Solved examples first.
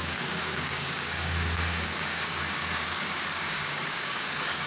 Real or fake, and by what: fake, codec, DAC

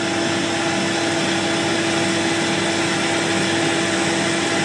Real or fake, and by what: real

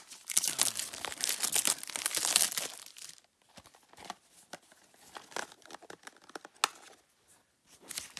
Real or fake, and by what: real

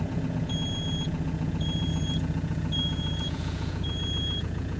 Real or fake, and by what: fake, vocoder, Vocos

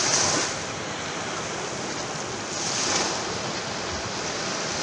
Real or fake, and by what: real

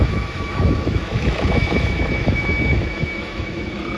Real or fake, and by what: fake, autoencoder, DAC-VAE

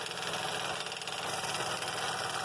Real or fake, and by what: real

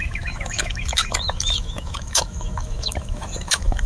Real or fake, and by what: fake, autoencoder, DAC-VAE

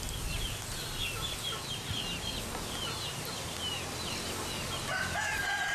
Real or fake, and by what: real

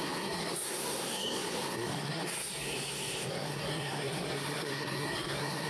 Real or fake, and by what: fake, codec, SNAC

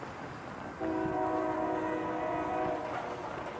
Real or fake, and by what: real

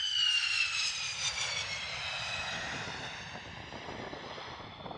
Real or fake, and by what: fake, vocoder, BigVGAN v2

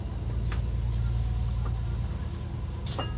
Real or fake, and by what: real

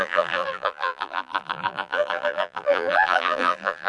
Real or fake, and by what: fake, vocoder, BigVGAN v2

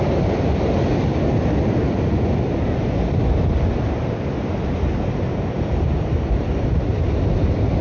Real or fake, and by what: real